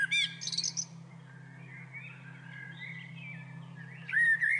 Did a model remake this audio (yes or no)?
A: no